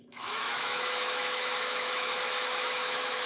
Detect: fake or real fake